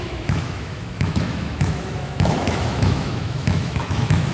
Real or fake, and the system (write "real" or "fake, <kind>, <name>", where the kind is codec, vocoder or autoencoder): fake, autoencoder, DAC-VAE